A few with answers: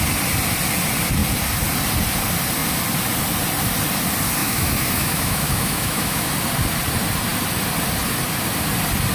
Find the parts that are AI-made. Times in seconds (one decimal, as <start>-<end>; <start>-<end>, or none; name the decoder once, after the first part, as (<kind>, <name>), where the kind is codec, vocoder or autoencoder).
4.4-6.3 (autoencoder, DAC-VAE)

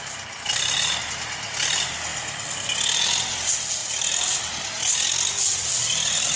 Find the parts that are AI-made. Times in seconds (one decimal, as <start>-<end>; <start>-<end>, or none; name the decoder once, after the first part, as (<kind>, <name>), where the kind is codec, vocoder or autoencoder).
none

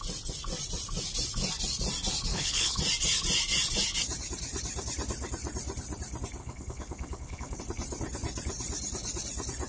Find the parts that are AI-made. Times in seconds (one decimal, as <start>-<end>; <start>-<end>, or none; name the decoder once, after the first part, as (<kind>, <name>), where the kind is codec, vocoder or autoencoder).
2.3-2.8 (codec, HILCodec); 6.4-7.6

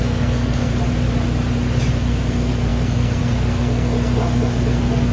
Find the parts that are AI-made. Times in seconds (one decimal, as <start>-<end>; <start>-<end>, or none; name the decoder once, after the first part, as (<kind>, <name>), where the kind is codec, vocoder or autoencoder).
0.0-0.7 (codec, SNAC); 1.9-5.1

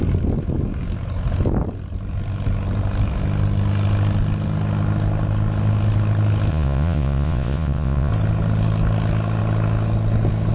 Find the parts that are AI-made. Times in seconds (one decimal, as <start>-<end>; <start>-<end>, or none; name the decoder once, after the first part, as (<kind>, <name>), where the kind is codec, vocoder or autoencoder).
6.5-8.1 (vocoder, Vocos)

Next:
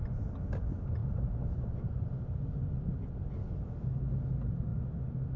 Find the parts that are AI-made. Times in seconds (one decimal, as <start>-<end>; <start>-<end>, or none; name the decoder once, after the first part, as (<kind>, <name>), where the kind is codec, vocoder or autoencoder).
3.4-4.0 (codec, DAC)